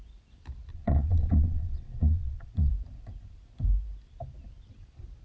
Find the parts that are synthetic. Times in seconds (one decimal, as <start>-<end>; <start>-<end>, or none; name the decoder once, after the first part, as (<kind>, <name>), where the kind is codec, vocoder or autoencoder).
0.7-2.7 (vocoder, Vocos)